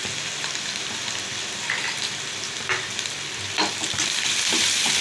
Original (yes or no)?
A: no